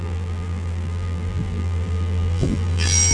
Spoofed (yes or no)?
yes